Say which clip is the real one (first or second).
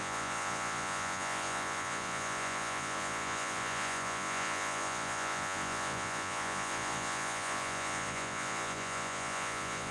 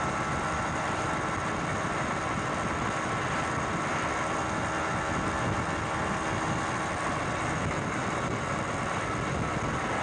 second